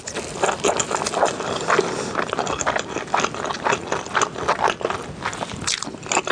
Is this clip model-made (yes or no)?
no